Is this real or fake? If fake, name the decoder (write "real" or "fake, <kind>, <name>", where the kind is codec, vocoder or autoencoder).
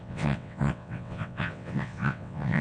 fake, vocoder, WaveNeXt